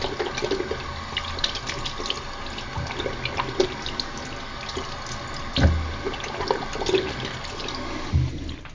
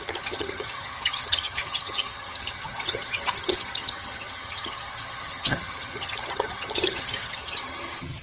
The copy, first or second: second